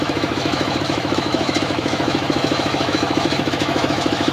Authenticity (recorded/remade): remade